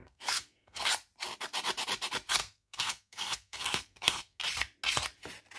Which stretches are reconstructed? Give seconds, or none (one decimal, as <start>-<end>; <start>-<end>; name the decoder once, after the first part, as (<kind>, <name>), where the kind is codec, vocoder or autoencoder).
0.0-0.9 (codec, SNAC); 2.4-4.4